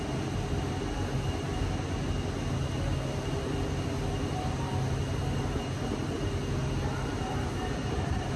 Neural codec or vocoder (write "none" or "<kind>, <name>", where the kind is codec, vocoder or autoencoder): none